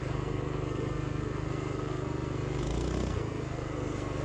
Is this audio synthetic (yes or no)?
yes